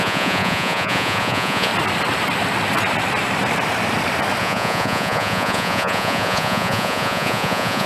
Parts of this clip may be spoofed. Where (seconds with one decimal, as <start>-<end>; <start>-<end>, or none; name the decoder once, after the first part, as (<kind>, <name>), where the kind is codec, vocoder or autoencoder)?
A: 0.0-1.7 (vocoder, Vocos); 4.4-7.9